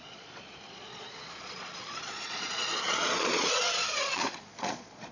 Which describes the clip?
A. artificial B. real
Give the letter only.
A